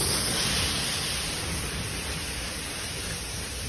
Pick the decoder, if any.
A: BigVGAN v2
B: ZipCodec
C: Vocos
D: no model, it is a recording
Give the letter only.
D